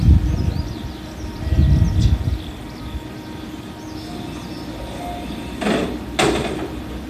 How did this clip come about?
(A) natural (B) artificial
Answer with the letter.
A